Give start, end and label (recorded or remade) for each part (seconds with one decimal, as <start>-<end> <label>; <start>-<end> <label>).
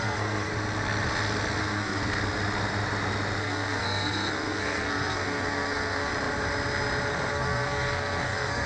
0.0-0.5 remade; 0.5-1.6 recorded; 1.6-2.0 remade; 2.0-3.4 recorded; 3.4-6.1 remade; 6.1-7.3 recorded; 7.3-8.7 remade